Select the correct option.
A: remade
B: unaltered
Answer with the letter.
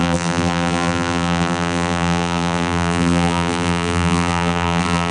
A